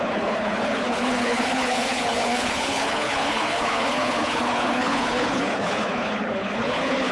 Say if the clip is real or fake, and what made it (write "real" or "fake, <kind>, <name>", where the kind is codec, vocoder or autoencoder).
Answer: fake, codec, HILCodec